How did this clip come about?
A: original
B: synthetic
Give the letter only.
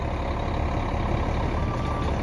A